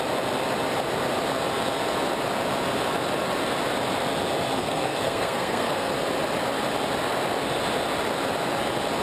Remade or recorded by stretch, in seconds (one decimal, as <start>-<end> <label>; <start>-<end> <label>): 0.0-4.6 recorded; 4.6-5.9 remade; 5.9-9.0 recorded